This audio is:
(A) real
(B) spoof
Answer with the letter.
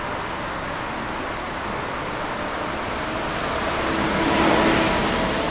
A